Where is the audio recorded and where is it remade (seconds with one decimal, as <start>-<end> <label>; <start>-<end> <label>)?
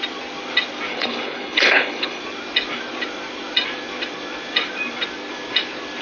0.0-0.9 recorded; 0.9-2.2 remade; 2.2-6.0 recorded